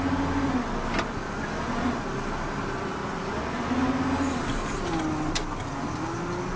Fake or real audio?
real